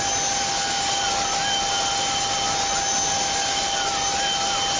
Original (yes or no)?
yes